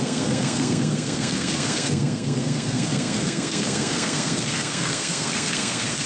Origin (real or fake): fake